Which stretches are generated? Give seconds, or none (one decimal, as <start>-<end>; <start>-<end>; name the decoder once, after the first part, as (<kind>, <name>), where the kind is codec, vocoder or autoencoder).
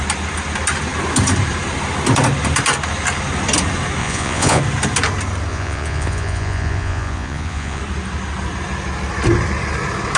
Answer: 4.0-4.6 (vocoder, Vocos); 5.5-7.8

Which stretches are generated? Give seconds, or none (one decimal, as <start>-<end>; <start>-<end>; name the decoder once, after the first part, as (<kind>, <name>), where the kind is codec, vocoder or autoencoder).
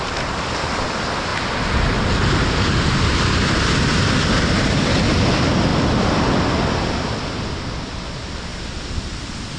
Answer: none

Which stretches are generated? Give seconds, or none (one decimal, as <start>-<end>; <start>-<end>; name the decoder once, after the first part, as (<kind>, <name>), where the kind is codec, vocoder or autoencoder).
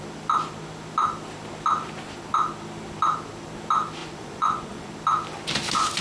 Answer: 4.0-4.9 (vocoder, Vocos)